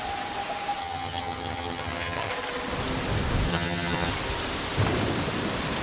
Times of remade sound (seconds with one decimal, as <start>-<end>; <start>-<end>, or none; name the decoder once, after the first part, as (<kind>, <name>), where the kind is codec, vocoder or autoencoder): 0.8-2.3 (vocoder, HiFi-GAN); 3.5-4.1